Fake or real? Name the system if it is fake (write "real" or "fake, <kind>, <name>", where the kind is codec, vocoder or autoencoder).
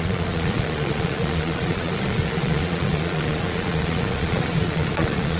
fake, vocoder, Vocos